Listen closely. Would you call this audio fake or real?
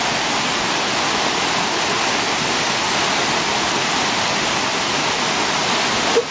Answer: real